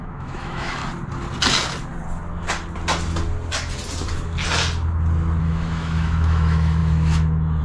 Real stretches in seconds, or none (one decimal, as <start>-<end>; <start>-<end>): 0.8-5.4